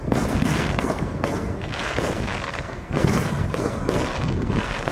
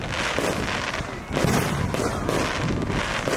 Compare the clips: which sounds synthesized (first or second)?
first